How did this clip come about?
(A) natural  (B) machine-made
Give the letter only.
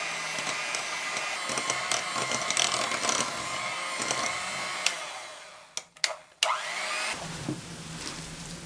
A